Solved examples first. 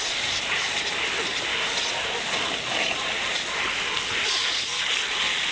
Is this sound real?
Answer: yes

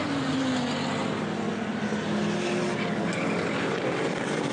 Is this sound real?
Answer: yes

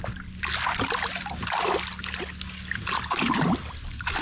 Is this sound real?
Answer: yes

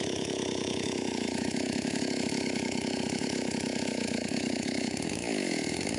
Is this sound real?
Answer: no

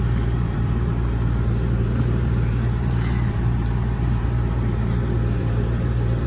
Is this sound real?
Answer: no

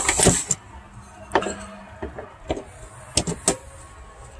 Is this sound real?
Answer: yes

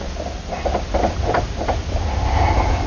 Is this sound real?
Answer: yes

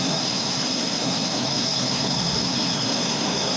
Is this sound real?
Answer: no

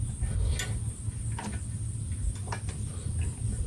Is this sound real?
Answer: yes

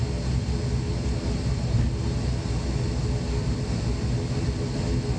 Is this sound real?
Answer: yes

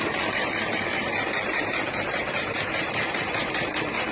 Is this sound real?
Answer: no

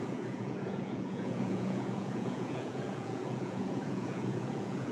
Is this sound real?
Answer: no